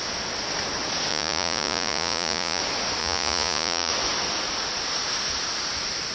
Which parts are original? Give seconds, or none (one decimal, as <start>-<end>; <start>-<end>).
0.0-1.1; 2.6-3.0; 3.9-6.1

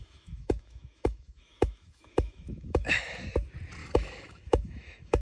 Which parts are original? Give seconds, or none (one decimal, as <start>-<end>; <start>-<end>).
3.1-3.8

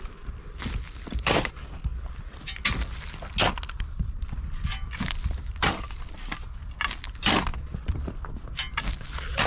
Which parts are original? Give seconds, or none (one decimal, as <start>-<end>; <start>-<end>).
1.9-4.4; 7.5-8.7

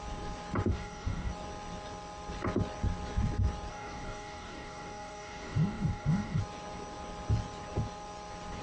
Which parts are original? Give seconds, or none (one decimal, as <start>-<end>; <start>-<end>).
0.0-0.7; 1.3-3.7; 6.4-8.6

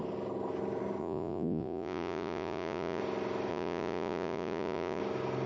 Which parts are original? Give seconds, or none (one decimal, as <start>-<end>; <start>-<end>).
0.0-1.0; 3.0-3.5; 5.0-5.5

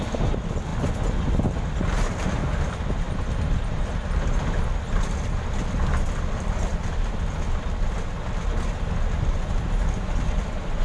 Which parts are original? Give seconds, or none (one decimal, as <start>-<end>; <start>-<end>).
0.0-10.8